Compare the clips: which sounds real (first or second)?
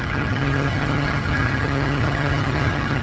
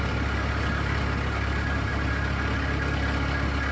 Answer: second